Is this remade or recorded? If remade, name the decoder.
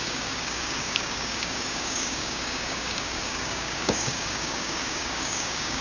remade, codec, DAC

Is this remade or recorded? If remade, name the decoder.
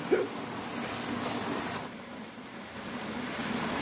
recorded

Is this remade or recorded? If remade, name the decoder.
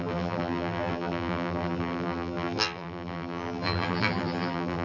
remade, vocoder, BigVGAN v2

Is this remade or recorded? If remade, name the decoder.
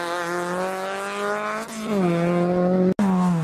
recorded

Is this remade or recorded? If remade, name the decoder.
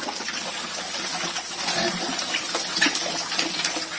recorded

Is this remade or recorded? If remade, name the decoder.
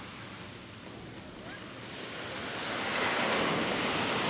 recorded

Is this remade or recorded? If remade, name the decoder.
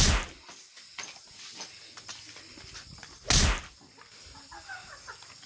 recorded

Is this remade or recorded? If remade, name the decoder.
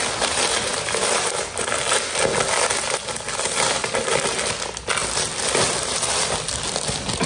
recorded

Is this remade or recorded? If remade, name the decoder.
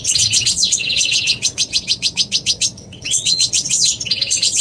remade, vocoder, WaveNeXt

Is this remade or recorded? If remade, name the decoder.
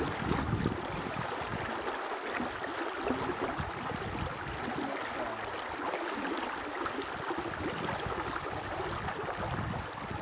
recorded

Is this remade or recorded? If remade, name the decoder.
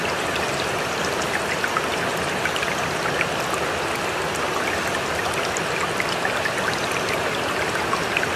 recorded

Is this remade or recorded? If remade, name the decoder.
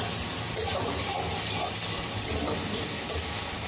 recorded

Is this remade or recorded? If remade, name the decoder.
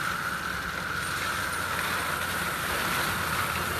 recorded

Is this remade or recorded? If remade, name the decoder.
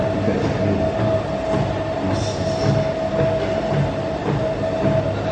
recorded